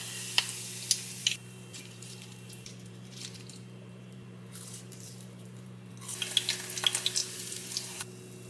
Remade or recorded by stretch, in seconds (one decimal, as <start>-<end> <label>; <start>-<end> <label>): 0.0-1.2 recorded; 1.2-5.9 remade; 5.9-7.2 recorded; 7.2-8.0 remade; 8.0-8.5 recorded